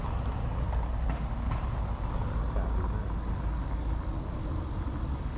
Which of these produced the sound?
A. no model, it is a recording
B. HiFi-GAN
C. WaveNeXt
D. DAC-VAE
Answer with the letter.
A